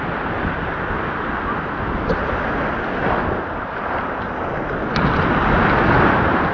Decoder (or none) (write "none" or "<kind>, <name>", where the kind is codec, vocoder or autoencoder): none